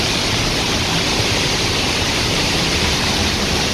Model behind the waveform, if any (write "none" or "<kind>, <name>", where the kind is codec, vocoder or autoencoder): vocoder, BigVGAN v2